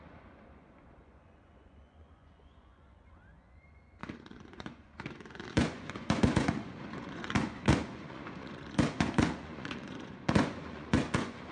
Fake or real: fake